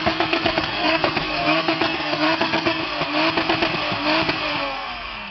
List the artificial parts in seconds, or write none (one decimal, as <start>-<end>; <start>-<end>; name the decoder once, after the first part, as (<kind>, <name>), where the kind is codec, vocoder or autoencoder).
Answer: 0.0-2.8 (codec, SNAC); 4.5-5.3